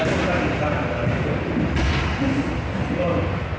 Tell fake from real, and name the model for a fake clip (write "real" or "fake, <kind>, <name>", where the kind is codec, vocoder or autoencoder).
real